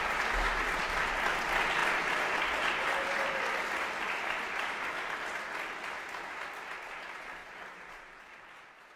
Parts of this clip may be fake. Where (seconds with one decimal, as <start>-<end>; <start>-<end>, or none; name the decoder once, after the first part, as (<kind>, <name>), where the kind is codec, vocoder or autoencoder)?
7.4-8.2 (vocoder, BigVGAN v2)